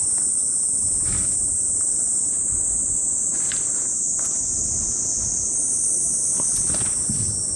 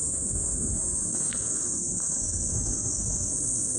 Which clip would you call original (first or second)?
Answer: first